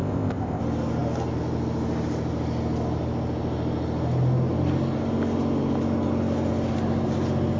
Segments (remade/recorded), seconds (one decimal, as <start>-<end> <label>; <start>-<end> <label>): 0.0-0.6 remade; 0.6-7.6 recorded